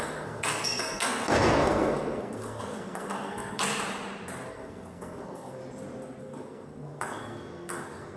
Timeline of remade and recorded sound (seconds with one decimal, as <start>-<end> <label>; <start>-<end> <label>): 0.0-3.6 remade; 3.6-4.5 recorded; 4.5-5.6 remade; 5.6-6.2 recorded; 6.2-8.2 remade